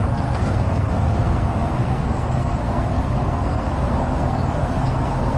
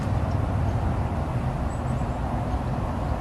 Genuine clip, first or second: second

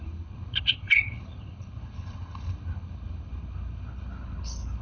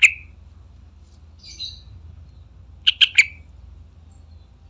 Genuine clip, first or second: second